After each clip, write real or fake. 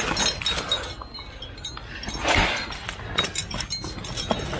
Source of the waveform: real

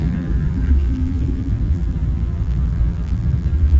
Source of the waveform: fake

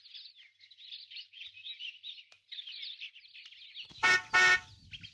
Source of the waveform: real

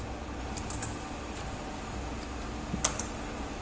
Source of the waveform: real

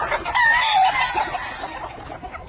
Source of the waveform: real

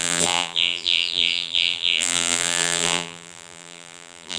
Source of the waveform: fake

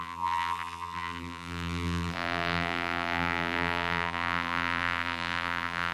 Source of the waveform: fake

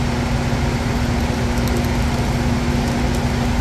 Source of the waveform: real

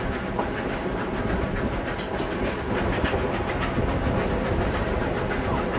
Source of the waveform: real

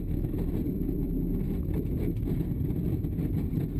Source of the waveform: fake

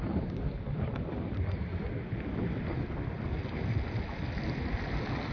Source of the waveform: real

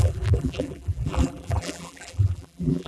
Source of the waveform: fake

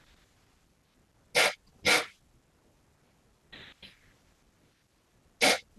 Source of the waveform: real